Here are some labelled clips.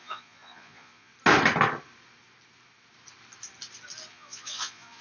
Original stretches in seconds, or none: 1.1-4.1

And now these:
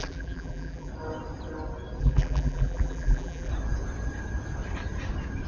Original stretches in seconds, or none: 0.9-2.0; 3.5-5.5

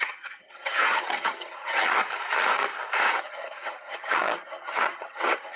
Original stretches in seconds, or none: 2.0-3.1

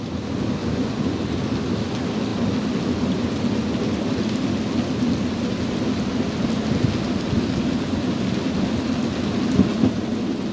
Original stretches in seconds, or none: 0.0-0.6; 1.2-10.5

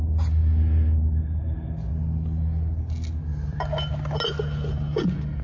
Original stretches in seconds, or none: 0.0-5.4

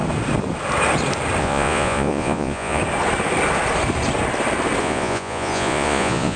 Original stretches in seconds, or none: 0.0-1.4; 2.8-4.8

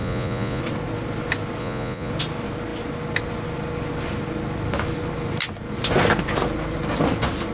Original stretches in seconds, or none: 0.6-1.6; 2.1-7.5